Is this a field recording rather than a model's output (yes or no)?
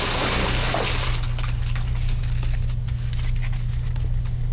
yes